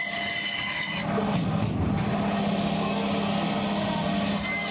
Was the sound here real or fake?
real